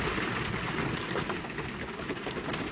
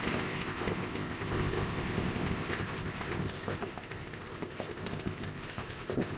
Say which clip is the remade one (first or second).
second